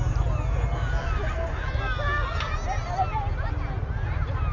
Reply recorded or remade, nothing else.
recorded